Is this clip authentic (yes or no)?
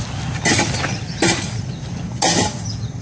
yes